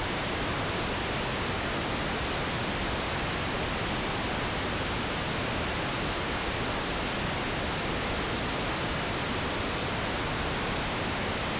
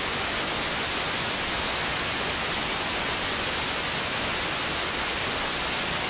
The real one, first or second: first